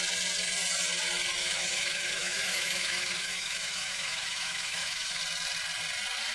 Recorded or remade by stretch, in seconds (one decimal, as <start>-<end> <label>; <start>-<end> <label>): 0.0-1.4 recorded; 1.4-5.2 remade; 5.2-6.3 recorded